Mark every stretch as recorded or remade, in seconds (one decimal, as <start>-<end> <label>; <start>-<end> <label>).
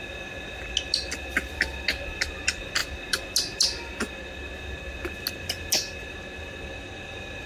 0.0-7.5 recorded